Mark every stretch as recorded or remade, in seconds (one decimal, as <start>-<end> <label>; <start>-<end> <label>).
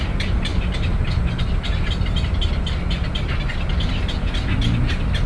0.0-5.3 recorded